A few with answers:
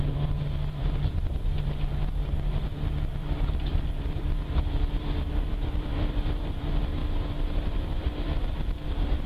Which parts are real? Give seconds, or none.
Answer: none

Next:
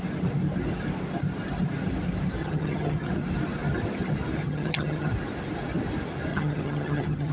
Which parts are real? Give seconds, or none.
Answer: 0.0-2.4; 3.1-4.4; 5.1-6.3

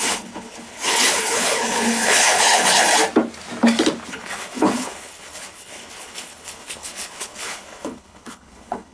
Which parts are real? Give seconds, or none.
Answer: 2.9-4.1

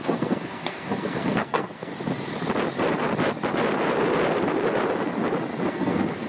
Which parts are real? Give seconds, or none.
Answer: 1.9-5.7